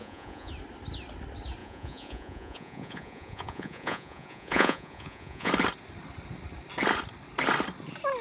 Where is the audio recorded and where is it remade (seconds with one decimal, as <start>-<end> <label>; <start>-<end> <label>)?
0.0-0.5 remade; 0.5-1.6 recorded; 1.6-5.5 remade; 5.5-8.2 recorded